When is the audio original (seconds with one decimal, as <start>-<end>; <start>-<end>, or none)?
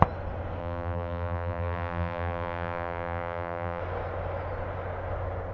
0.0-0.6; 3.8-5.5